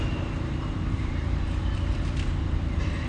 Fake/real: fake